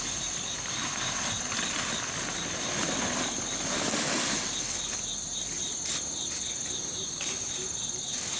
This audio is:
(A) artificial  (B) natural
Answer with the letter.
B